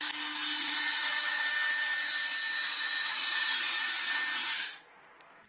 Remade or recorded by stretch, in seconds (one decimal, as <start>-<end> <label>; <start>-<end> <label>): 0.0-0.6 recorded; 0.6-1.4 remade; 1.4-2.7 recorded; 2.7-4.1 remade; 4.1-5.5 recorded